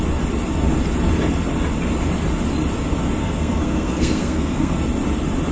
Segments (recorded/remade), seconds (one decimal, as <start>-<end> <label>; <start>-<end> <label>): 0.0-3.2 recorded; 3.2-4.8 remade; 4.8-5.5 recorded